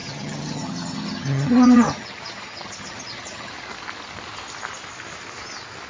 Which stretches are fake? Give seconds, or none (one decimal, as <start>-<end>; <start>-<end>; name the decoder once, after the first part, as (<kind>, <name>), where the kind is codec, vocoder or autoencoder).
0.0-3.5 (vocoder, HiFi-GAN)